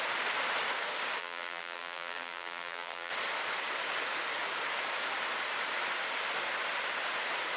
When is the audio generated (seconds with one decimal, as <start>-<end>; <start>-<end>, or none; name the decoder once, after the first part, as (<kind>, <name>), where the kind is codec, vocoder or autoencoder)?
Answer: 1.2-3.1 (vocoder, BigVGAN v2)